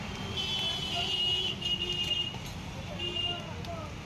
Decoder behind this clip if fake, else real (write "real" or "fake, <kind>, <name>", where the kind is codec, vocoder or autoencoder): real